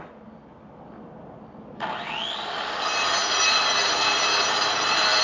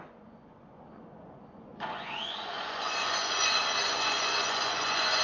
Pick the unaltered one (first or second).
first